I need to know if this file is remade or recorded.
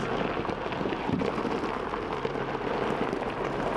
remade